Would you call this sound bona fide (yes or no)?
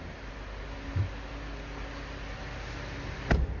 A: yes